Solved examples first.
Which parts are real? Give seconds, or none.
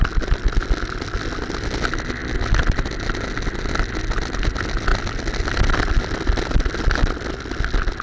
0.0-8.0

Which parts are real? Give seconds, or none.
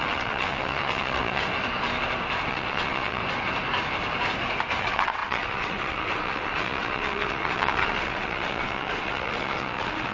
1.4-2.5; 3.2-4.8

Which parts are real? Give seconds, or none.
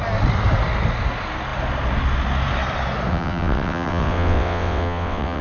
0.0-3.1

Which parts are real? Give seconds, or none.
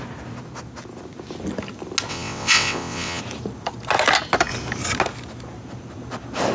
0.0-2.1; 3.2-6.5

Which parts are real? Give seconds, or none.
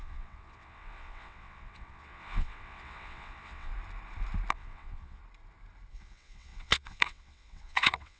3.7-4.5; 5.2-5.9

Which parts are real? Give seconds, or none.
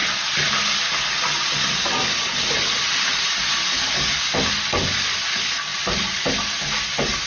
0.0-7.3